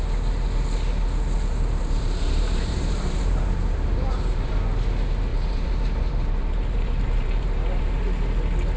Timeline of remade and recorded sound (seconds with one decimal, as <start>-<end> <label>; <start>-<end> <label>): 0.0-1.5 recorded; 1.5-4.5 remade; 4.5-5.3 recorded; 5.3-8.0 remade; 8.0-8.8 recorded